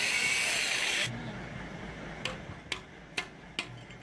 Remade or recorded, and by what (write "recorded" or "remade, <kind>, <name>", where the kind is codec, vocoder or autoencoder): recorded